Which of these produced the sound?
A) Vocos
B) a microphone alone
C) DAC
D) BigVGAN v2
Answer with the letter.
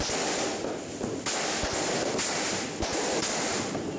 B